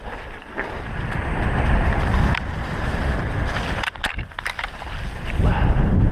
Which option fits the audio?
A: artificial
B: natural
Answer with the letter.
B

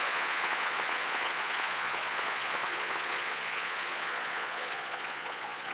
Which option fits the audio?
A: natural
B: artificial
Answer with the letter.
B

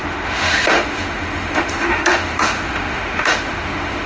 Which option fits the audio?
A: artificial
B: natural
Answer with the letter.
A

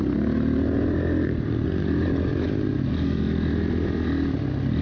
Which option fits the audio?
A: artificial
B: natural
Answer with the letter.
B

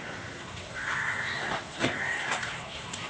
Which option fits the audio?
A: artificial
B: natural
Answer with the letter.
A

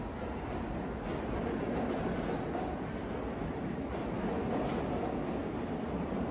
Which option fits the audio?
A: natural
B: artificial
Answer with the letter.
A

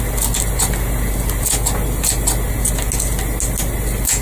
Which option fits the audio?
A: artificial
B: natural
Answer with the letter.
B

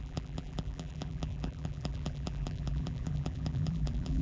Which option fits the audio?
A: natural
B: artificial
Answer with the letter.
B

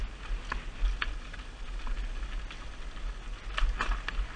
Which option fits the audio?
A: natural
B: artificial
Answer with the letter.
A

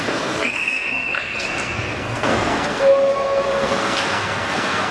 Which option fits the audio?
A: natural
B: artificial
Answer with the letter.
B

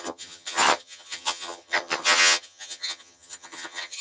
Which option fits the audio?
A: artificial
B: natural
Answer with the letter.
A